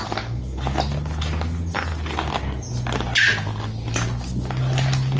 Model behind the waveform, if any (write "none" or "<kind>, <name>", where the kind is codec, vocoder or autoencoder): none